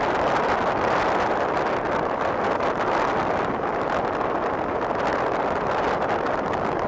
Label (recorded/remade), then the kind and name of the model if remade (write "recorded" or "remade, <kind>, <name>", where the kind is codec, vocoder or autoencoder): recorded